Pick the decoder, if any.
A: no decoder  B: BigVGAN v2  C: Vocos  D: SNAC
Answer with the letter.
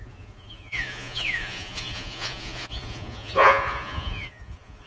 C